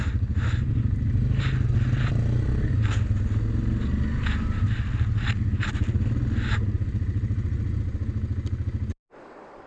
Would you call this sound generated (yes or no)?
no